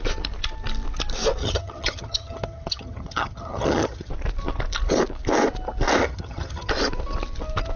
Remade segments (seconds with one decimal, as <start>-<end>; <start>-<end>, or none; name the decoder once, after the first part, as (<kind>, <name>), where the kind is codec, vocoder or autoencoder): 1.4-4.1 (vocoder, HiFi-GAN); 6.0-6.7